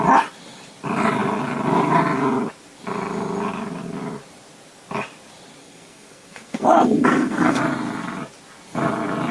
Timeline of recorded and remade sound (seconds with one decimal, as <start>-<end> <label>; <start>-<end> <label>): 0.0-5.6 recorded; 5.6-7.6 remade; 7.6-9.3 recorded